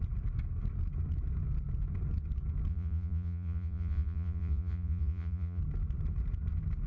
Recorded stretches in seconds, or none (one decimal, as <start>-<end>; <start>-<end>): 0.0-2.7; 5.6-6.9